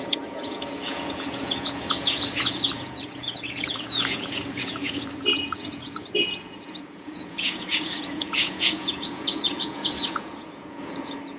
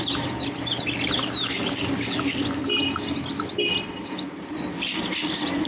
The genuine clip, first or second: second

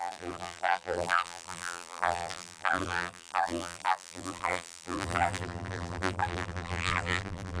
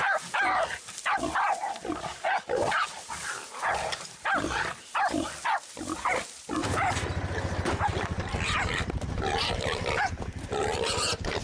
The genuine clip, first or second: second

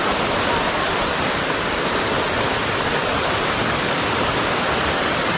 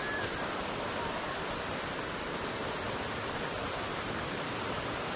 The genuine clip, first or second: second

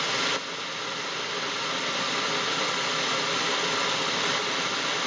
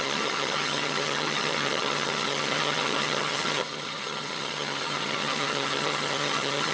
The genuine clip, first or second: first